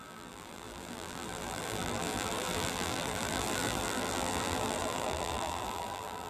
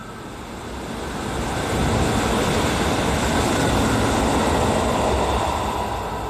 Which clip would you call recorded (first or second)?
second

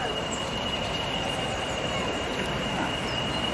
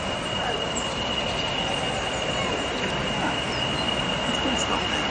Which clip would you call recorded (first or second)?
second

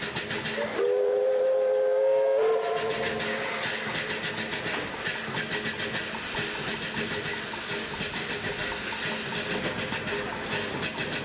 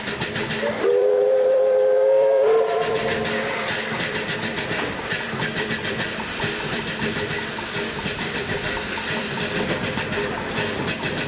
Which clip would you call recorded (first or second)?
first